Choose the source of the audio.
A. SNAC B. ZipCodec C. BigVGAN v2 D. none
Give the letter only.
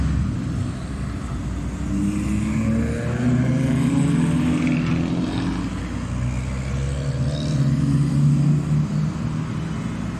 D